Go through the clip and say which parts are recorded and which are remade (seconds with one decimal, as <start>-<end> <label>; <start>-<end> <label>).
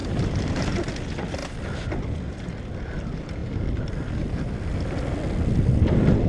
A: 0.0-0.9 remade; 0.9-6.3 recorded